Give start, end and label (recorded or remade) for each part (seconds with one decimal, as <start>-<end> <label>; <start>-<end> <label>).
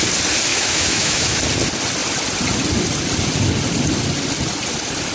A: 0.0-0.5 recorded; 0.5-1.4 remade; 1.4-5.1 recorded